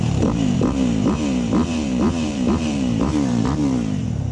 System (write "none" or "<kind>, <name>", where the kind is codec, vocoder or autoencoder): vocoder, BigVGAN v2